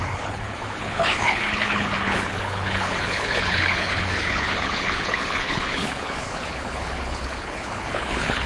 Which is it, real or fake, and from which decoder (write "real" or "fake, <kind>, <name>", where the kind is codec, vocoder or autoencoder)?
fake, codec, HILCodec